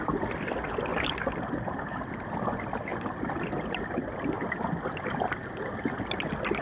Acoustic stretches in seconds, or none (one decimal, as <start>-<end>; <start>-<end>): 0.0-0.9; 2.1-2.9; 4.0-6.6